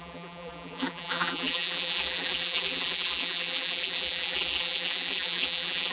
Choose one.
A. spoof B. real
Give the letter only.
A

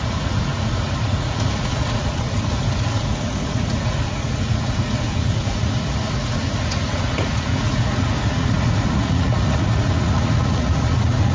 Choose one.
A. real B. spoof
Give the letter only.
B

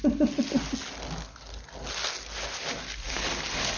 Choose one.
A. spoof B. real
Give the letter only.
B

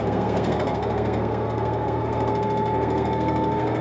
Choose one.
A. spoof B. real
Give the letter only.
A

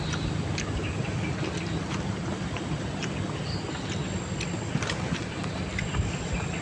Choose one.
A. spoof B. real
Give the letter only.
B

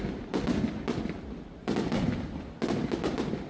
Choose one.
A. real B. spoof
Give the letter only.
A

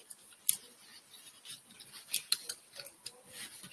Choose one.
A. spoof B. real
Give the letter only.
B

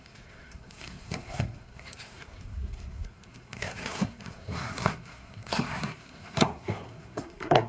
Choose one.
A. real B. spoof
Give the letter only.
B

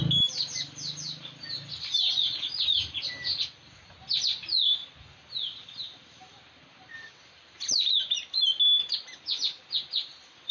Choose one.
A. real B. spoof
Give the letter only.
B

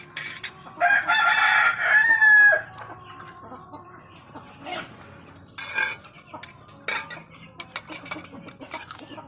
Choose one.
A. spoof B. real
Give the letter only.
B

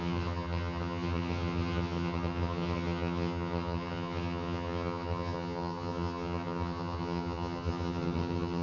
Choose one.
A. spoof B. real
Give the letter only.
A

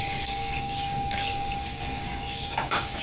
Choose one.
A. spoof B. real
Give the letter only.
A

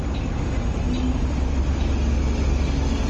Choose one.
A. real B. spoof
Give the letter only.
A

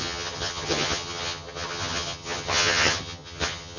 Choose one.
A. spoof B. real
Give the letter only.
A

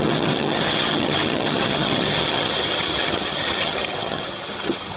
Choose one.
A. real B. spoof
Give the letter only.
B